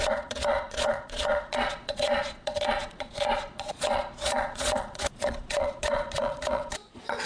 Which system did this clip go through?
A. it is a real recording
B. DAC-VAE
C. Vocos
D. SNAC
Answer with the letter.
C